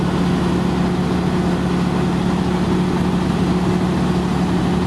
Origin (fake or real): real